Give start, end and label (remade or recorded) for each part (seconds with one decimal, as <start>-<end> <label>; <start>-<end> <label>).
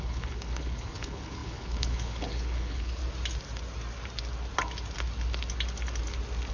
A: 0.0-3.0 remade; 3.0-6.5 recorded